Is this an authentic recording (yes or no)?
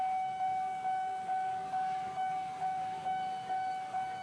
no